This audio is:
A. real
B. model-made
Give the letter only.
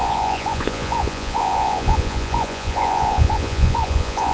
B